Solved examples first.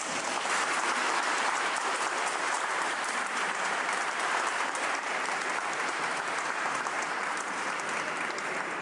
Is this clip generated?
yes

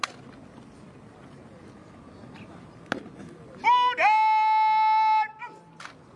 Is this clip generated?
no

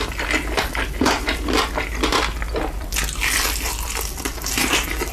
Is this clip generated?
no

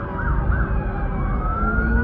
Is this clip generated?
no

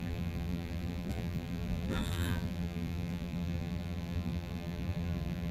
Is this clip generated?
yes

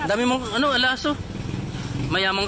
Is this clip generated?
no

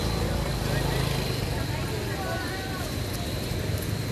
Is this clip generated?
no